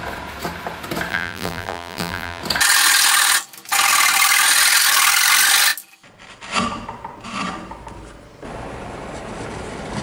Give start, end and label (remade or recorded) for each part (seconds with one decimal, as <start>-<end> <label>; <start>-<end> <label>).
0.0-1.1 recorded; 1.1-2.4 remade; 2.4-10.0 recorded